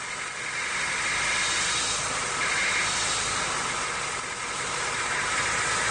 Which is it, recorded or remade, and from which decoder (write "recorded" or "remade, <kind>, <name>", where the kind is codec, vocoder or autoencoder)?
recorded